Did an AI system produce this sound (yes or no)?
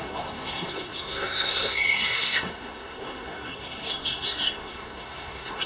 yes